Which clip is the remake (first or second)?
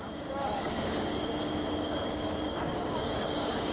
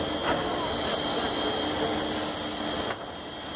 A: first